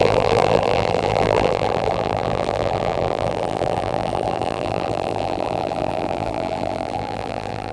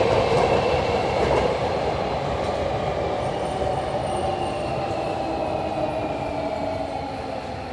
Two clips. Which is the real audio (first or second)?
second